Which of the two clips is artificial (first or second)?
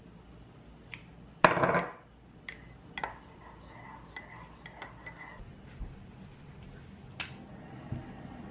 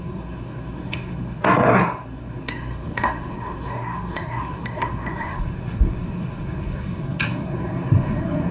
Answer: second